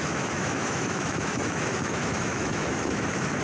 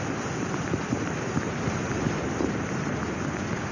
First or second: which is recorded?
second